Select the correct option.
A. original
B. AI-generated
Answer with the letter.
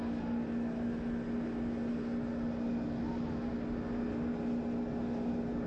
A